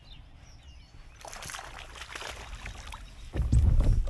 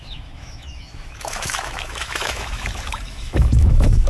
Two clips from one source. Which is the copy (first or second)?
second